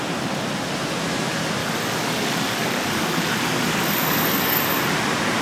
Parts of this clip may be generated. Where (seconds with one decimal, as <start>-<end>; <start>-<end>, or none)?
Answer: 1.6-4.8